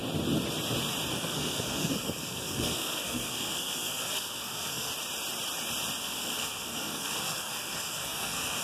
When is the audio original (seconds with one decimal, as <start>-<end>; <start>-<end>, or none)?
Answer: 0.0-1.1; 4.9-6.0